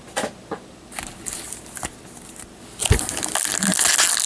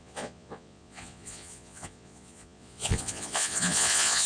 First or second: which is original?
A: first